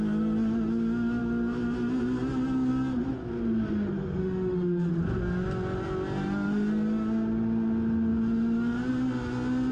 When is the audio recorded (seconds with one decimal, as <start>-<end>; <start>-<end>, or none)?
0.0-4.2; 4.9-9.7